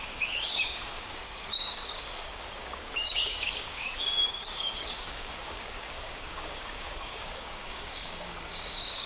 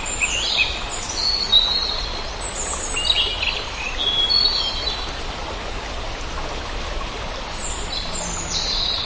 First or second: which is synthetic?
first